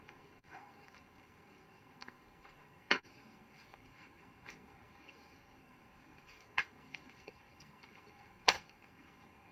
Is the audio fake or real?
fake